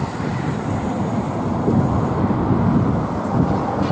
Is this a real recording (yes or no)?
yes